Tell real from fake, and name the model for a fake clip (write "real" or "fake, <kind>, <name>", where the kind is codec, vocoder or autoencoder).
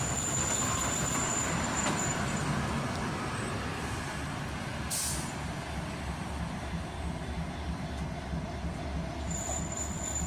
fake, vocoder, BigVGAN v2